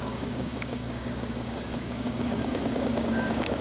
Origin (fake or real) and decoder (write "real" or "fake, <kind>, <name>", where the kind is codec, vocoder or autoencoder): fake, codec, DAC